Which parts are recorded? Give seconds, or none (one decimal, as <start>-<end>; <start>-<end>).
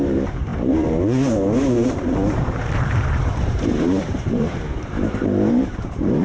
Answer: none